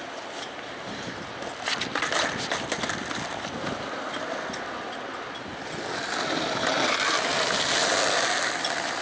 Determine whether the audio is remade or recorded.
recorded